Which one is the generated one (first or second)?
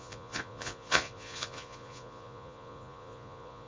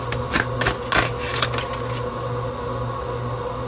first